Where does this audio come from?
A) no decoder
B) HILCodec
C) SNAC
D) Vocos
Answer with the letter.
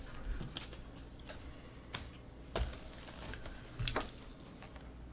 A